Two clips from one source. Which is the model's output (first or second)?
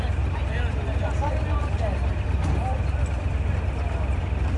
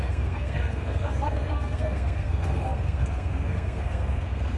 second